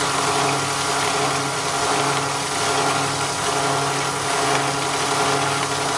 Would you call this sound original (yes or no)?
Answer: yes